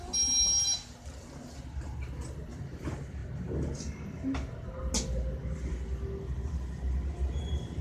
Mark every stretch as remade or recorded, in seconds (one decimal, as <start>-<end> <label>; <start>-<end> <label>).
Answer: 0.0-7.8 recorded